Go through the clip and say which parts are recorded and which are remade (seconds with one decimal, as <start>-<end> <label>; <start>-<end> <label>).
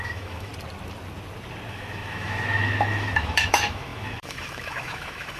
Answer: 0.0-0.5 remade; 0.5-1.7 recorded; 1.7-5.4 remade